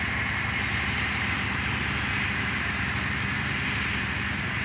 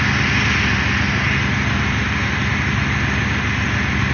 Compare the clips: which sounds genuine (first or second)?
second